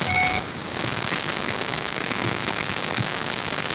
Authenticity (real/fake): fake